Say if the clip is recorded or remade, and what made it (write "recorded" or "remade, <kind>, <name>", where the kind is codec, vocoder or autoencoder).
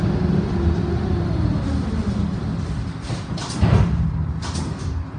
recorded